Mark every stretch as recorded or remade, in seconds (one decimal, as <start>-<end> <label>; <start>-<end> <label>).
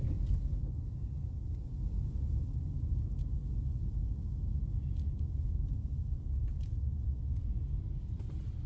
0.0-8.7 recorded